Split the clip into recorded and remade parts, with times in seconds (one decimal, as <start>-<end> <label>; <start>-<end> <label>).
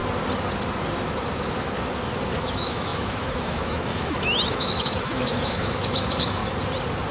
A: 0.0-2.4 recorded; 2.4-6.4 remade; 6.4-7.1 recorded